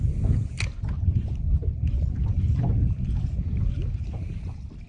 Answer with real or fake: real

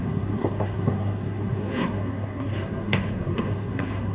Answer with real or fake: fake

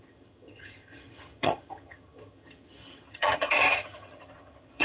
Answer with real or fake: fake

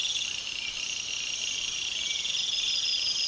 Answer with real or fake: real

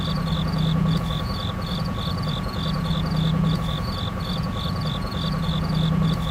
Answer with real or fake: fake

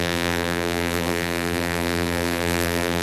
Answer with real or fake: fake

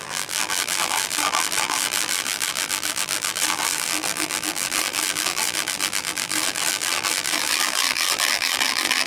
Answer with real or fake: fake